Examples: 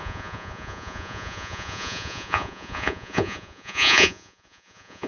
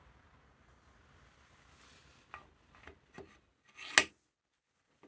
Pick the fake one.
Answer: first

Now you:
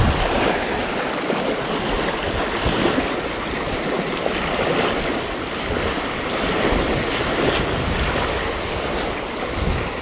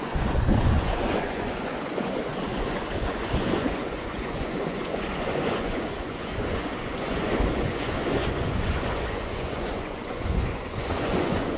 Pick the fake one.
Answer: second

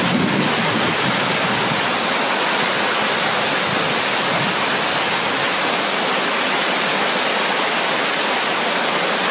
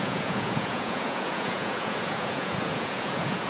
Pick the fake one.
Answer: second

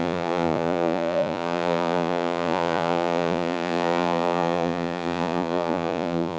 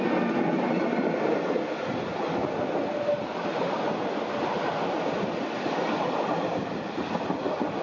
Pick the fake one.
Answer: first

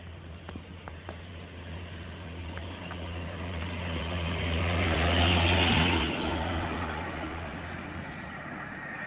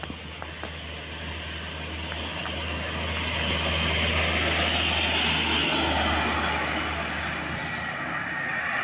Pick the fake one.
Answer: first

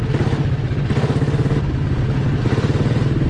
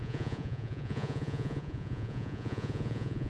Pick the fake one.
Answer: second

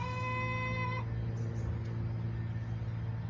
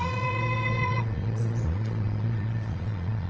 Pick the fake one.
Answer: second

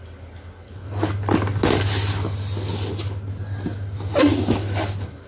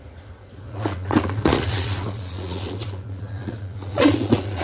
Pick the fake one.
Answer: second